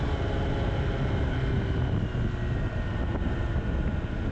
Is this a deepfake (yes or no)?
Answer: no